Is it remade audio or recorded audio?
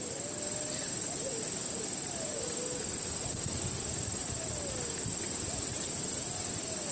recorded